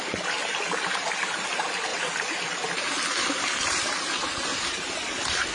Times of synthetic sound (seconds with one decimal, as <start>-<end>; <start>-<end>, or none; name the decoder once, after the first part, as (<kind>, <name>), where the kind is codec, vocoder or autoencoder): none

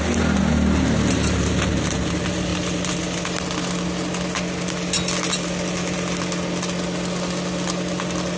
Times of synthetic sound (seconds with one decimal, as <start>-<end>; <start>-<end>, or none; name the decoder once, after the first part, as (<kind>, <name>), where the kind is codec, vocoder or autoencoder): none

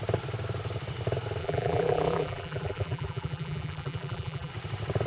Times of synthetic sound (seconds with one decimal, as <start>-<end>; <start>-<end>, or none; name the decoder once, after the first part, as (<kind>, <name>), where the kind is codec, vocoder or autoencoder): 1.4-4.5 (vocoder, BigVGAN v2)